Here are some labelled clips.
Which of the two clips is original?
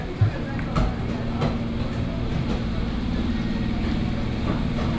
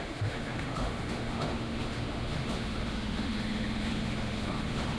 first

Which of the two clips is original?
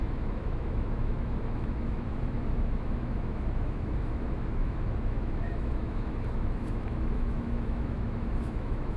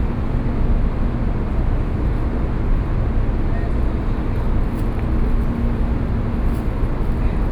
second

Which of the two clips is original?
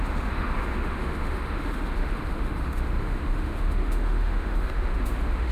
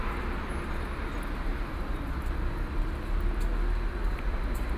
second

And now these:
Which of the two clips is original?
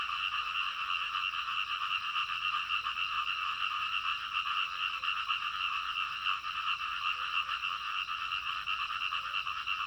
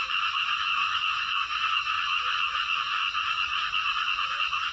first